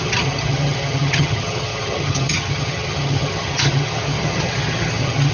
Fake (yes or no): yes